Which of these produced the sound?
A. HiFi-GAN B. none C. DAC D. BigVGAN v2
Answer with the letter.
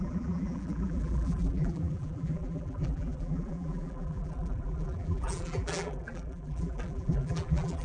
D